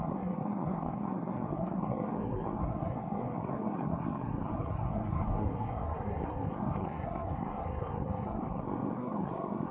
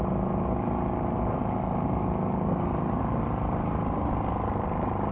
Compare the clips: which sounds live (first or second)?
second